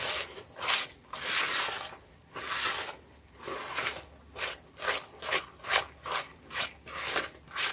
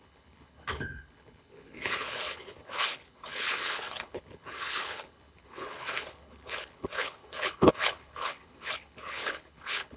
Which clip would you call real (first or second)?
first